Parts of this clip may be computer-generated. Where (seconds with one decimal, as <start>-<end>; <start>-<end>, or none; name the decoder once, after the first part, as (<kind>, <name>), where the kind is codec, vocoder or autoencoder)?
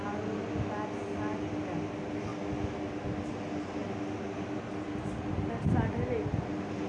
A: none